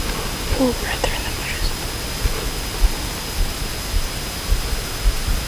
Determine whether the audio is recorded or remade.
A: recorded